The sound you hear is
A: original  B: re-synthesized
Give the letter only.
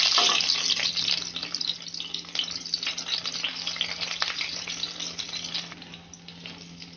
A